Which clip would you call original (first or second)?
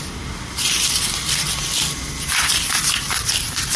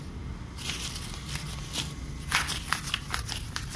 second